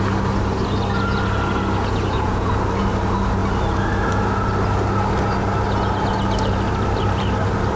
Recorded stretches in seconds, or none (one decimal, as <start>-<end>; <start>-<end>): 0.0-1.8; 2.5-7.8